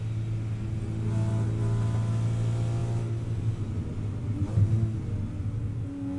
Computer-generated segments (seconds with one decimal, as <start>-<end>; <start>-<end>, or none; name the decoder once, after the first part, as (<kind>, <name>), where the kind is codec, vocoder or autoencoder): none